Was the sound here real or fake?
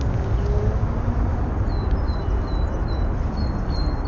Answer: real